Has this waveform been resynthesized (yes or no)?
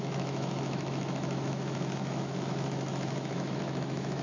yes